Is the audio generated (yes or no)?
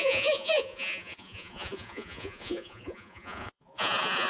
yes